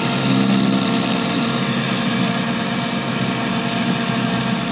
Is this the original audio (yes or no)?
yes